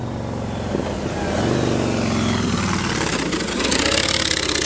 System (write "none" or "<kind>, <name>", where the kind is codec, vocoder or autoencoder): none